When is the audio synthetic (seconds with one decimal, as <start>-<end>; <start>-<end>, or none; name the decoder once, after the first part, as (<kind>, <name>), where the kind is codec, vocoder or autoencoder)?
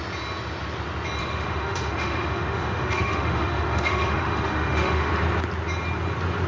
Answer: 1.2-5.1 (autoencoder, DAC-VAE)